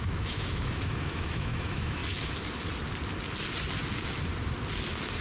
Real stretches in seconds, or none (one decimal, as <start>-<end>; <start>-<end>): 2.0-5.2